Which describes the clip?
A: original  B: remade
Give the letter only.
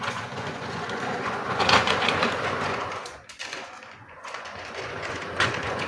B